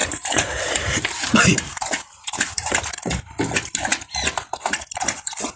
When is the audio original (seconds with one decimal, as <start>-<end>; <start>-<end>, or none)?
3.4-5.6